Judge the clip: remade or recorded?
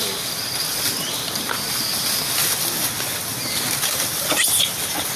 recorded